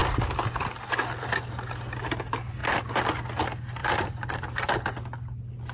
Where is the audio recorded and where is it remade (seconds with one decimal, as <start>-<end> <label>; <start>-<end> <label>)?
0.0-3.8 recorded; 3.8-4.6 remade; 4.6-5.7 recorded